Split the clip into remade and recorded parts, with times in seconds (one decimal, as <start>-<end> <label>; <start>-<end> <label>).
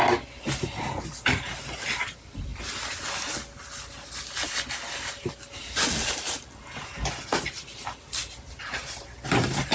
0.0-9.7 recorded